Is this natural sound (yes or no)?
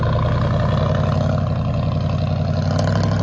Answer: yes